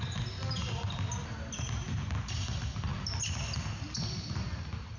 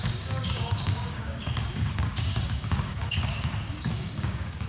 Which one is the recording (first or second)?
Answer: first